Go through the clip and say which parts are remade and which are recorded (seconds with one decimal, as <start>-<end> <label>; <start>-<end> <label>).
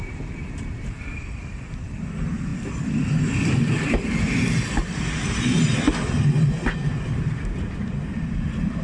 0.0-8.8 recorded